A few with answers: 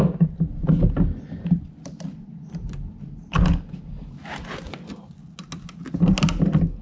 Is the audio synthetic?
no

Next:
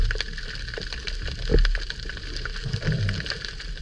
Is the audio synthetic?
no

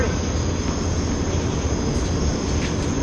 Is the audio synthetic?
no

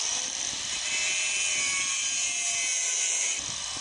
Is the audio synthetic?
no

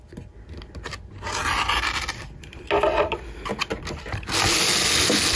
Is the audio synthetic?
no